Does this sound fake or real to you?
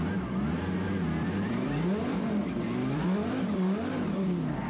fake